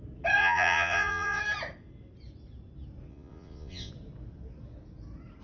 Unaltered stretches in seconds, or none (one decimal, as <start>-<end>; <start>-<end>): 0.0-0.4; 1.4-3.1; 3.9-5.4